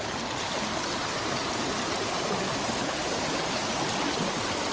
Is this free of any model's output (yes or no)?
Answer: yes